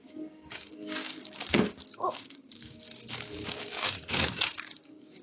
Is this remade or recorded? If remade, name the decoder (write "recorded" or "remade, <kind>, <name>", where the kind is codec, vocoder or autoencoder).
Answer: remade, codec, DAC